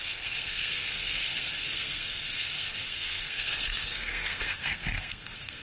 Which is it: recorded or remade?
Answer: remade